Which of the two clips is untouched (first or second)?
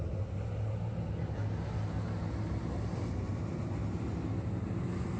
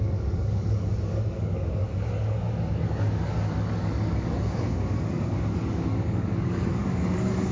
first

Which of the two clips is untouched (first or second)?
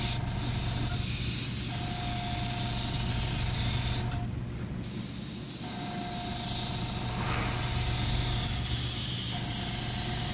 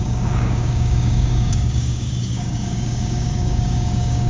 first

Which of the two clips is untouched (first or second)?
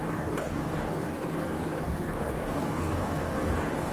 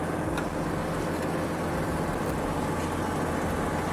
second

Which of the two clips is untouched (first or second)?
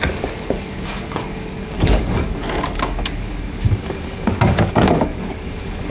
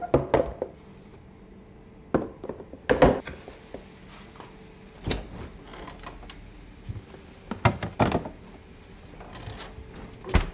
second